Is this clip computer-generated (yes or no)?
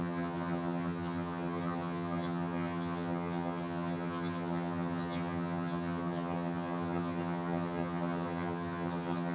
yes